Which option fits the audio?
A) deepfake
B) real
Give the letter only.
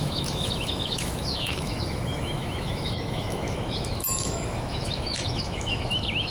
A